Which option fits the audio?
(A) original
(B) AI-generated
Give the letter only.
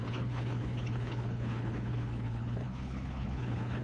B